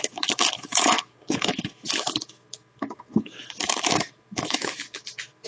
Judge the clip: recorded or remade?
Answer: remade